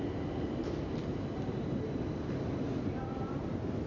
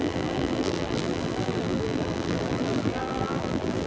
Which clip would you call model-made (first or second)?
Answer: second